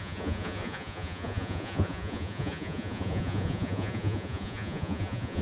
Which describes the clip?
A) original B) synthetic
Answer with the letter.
B